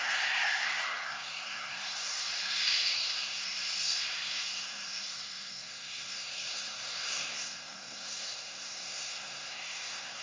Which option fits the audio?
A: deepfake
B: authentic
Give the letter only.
A